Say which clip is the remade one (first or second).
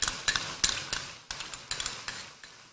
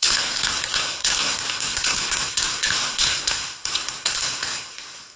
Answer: second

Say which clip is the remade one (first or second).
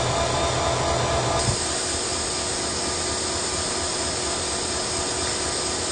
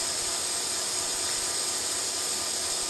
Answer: second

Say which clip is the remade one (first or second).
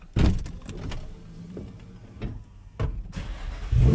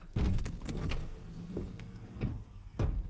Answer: second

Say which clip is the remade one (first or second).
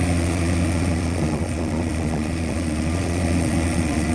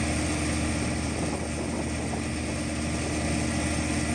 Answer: first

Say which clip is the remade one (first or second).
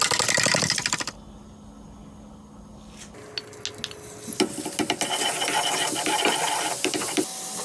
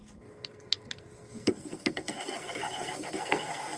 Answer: second